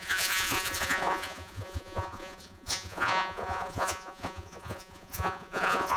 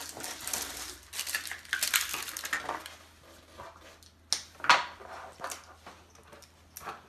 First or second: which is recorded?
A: second